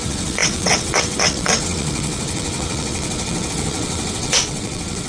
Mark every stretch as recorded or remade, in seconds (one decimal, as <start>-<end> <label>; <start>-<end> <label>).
0.0-5.1 remade

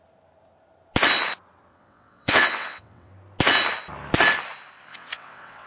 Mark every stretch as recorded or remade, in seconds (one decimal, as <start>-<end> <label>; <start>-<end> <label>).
0.0-1.7 recorded; 1.7-3.1 remade; 3.1-4.9 recorded; 4.9-5.7 remade

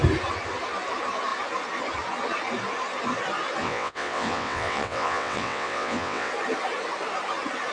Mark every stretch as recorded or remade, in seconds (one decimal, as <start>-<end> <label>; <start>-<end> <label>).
0.0-3.6 recorded; 3.6-6.3 remade; 6.3-7.7 recorded

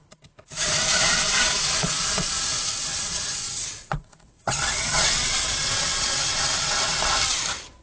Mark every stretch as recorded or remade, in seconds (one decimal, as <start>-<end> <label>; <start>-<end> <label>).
0.0-0.9 recorded; 0.9-2.3 remade; 2.3-2.9 recorded; 2.9-7.1 remade; 7.1-7.8 recorded

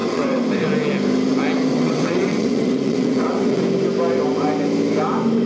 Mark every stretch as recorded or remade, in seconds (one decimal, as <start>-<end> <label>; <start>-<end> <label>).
0.0-0.7 remade; 0.7-1.7 recorded; 1.7-3.6 remade; 3.6-5.5 recorded

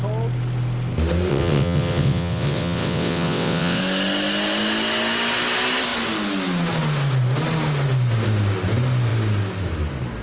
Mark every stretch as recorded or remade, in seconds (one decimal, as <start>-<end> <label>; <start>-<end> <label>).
0.0-1.3 recorded; 1.3-3.8 remade; 3.8-10.2 recorded